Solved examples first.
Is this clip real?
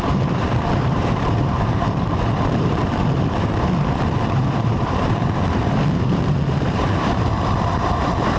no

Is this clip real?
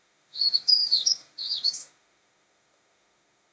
no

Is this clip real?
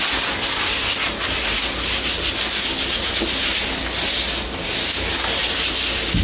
yes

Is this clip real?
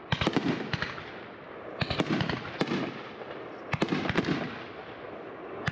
yes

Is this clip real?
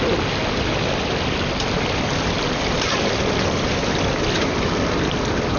yes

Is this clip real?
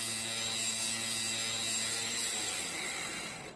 yes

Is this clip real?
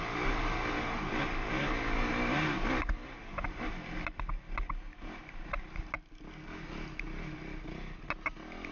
yes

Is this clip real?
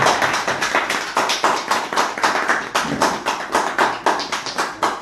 yes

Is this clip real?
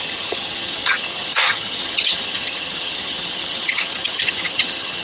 no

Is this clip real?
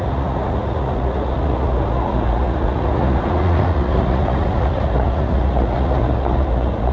no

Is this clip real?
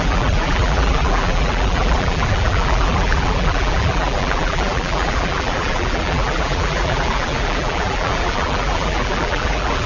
no